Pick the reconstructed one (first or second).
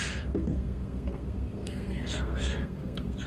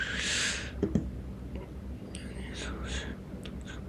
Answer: first